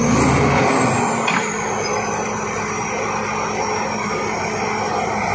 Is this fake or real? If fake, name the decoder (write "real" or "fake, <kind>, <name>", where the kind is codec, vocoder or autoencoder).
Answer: real